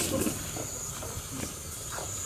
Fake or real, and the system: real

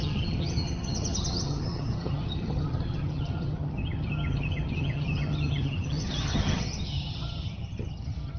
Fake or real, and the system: fake, vocoder, HiFi-GAN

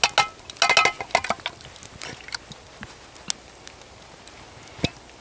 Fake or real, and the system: real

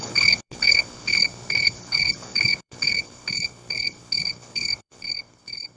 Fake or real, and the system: fake, codec, HILCodec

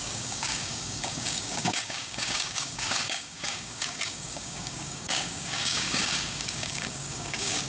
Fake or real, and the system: fake, codec, DAC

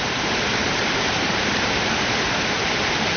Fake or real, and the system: fake, vocoder, BigVGAN v2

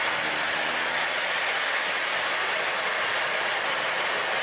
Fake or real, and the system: real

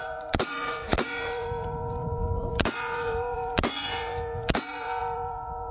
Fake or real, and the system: fake, vocoder, Vocos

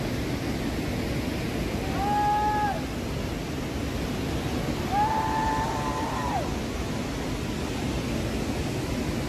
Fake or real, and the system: real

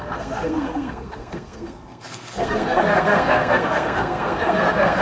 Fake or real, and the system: fake, codec, SNAC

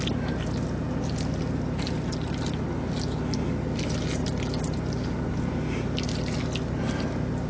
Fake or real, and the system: real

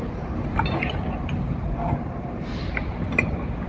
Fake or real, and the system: real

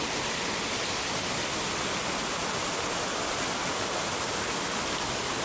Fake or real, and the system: real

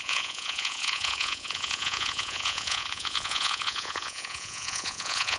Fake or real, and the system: fake, vocoder, Vocos